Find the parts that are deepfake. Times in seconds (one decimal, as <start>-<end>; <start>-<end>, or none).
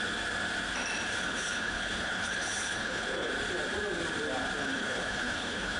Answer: 1.1-3.3; 4.6-5.8